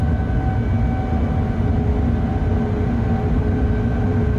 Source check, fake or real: real